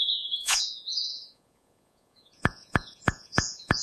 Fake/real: fake